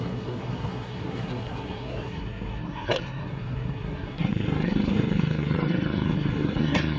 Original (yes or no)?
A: no